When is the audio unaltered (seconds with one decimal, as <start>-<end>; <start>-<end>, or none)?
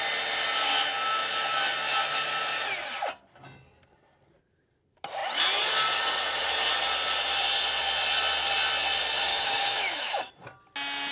0.0-9.3; 10.3-11.1